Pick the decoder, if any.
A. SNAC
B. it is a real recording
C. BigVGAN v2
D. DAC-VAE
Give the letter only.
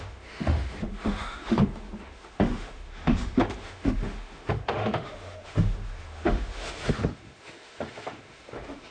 D